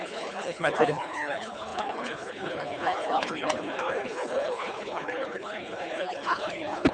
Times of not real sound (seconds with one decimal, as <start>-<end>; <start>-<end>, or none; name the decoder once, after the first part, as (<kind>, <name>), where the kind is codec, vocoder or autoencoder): 0.0-6.9 (codec, HILCodec)